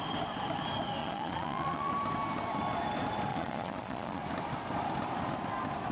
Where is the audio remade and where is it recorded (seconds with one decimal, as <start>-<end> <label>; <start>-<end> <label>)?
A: 0.0-1.0 recorded; 1.0-1.9 remade; 1.9-3.3 recorded; 3.3-4.2 remade; 4.2-5.9 recorded